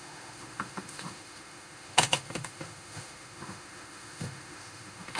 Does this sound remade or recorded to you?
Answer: remade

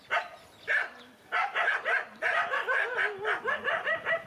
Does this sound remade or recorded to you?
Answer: recorded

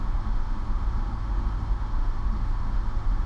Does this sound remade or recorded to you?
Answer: remade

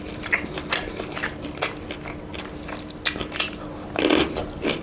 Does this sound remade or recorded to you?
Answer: recorded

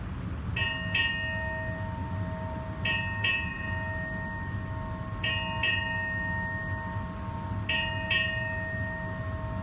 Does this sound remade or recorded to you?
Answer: recorded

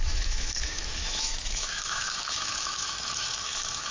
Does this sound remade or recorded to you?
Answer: remade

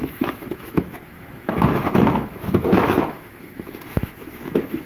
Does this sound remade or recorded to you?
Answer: remade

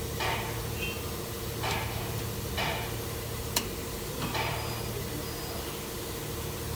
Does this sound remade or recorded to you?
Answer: recorded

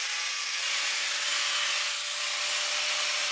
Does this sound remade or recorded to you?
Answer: recorded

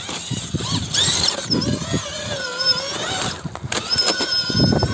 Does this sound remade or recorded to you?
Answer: recorded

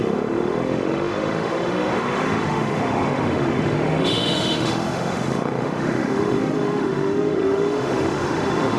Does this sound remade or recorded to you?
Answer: remade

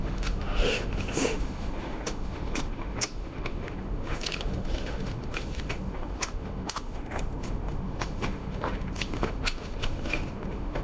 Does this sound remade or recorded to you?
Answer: remade